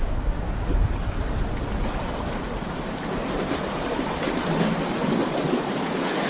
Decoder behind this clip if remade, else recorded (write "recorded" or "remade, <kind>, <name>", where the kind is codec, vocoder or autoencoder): recorded